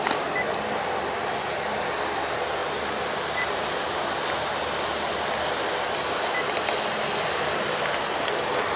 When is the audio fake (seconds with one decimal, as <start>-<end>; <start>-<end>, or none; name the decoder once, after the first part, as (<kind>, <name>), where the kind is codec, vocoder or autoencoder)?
none